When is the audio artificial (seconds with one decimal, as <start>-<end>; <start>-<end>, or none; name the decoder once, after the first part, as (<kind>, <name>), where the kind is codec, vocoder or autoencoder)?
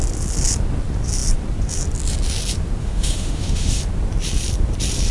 2.8-3.8 (autoencoder, DAC-VAE)